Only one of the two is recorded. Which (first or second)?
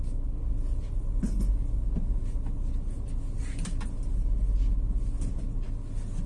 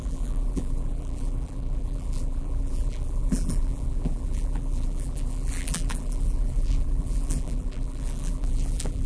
first